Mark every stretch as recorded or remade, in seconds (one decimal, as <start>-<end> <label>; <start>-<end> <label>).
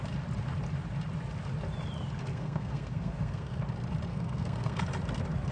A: 0.0-2.3 recorded; 2.3-3.6 remade; 3.6-4.1 recorded; 4.1-4.8 remade; 4.8-5.5 recorded